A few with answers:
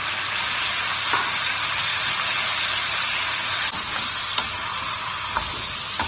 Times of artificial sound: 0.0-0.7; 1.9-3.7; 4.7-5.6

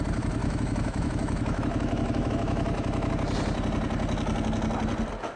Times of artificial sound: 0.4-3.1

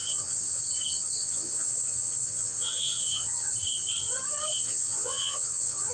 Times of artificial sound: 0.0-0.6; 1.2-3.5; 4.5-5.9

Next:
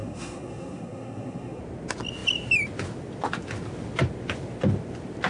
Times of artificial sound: 0.0-1.6

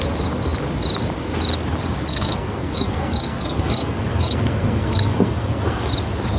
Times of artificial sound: 2.1-5.9